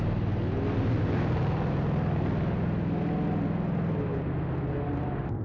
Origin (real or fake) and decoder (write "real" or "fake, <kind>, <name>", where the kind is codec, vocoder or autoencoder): real